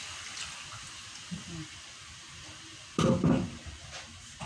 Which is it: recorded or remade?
recorded